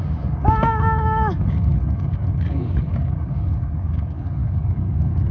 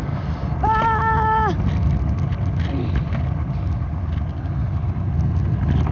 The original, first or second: second